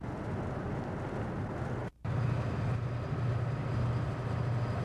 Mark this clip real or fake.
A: real